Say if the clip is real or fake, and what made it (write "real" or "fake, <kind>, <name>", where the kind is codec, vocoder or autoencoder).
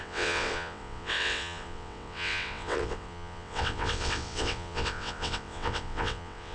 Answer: fake, vocoder, WaveNeXt